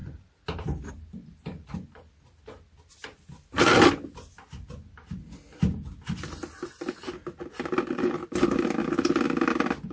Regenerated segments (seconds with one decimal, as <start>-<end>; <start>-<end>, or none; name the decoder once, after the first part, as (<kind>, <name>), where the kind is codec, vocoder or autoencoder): none